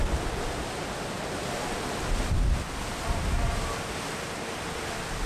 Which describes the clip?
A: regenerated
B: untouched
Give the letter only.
B